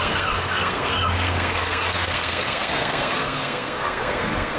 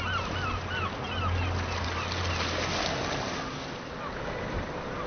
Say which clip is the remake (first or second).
first